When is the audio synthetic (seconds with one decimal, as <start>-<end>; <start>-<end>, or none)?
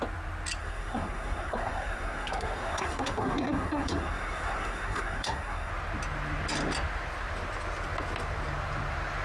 0.6-5.7